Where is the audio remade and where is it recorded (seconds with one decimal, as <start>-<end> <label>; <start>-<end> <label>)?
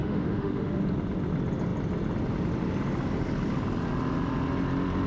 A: 0.0-0.8 remade; 0.8-5.1 recorded